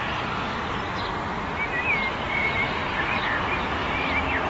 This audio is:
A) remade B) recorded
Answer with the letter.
B